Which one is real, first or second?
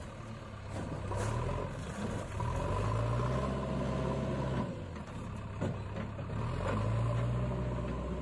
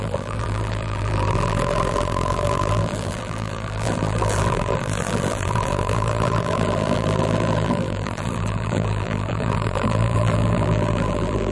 first